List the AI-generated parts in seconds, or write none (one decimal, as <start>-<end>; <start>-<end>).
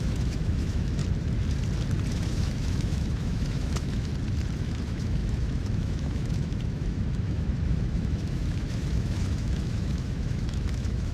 0.0-1.0; 2.1-4.1; 4.6-11.1